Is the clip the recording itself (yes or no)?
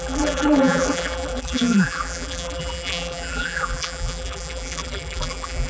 no